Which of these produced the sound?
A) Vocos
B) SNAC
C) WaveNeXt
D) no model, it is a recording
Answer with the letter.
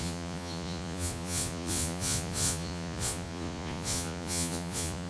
A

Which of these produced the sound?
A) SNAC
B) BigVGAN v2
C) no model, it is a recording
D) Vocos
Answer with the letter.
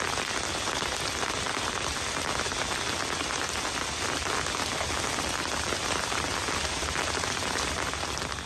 C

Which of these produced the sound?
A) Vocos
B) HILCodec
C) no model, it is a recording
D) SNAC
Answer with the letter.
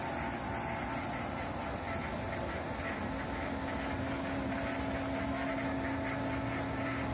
C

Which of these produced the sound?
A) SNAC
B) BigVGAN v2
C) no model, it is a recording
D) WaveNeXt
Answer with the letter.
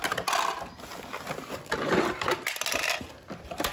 C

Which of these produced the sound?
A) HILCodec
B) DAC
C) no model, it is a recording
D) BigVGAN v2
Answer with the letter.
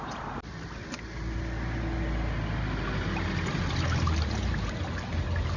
C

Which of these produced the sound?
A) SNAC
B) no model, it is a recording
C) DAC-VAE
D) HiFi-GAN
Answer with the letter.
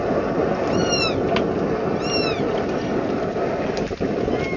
B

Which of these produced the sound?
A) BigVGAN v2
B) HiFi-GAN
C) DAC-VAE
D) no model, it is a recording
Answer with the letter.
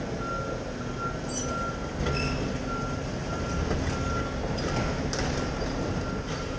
D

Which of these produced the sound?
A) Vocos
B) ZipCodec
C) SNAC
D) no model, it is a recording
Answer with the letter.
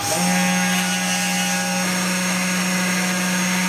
D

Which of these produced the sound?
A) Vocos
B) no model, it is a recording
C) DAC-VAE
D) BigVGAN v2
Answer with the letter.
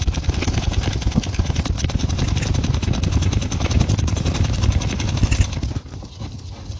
B